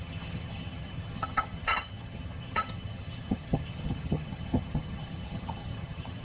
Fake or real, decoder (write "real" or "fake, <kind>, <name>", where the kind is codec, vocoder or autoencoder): fake, vocoder, HiFi-GAN